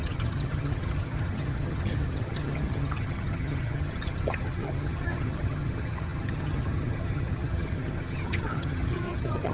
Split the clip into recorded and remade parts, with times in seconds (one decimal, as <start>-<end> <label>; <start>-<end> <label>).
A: 0.0-9.5 remade